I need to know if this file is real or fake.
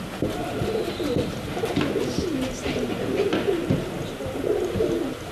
real